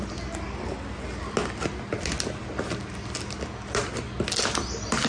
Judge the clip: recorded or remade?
recorded